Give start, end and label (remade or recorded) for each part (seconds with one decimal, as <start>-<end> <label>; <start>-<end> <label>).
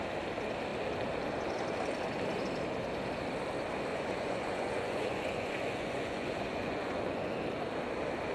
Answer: 0.0-3.9 recorded; 3.9-7.3 remade; 7.3-8.3 recorded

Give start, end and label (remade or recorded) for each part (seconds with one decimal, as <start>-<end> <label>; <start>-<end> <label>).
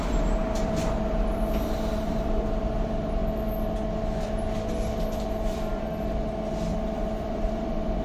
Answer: 0.0-3.2 remade; 3.2-4.2 recorded; 4.2-5.9 remade; 5.9-6.7 recorded; 6.7-8.0 remade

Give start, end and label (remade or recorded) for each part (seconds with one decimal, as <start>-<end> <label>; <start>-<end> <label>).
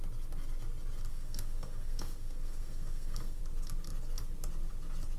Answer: 0.0-1.1 recorded; 1.1-3.4 remade; 3.4-5.2 recorded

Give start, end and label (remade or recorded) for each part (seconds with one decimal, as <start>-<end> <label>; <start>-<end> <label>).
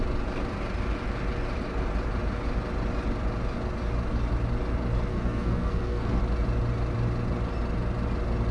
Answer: 0.0-5.1 recorded; 5.1-6.2 remade; 6.2-8.5 recorded